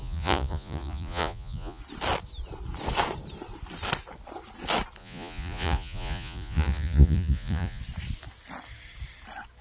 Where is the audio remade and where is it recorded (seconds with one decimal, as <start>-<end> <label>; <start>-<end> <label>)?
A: 0.0-1.8 remade; 1.8-5.0 recorded; 5.0-7.8 remade; 7.8-9.6 recorded